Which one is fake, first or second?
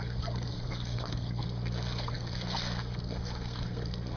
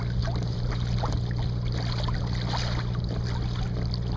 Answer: first